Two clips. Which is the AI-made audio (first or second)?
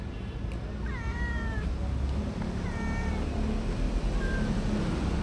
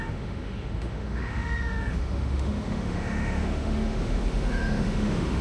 second